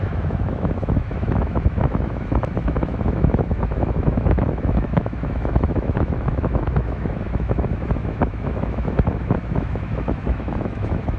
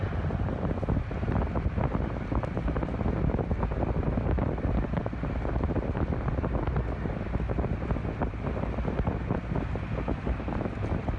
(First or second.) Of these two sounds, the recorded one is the second